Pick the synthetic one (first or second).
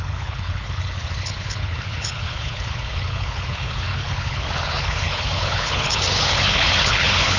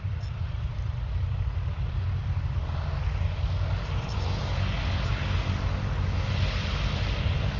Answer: first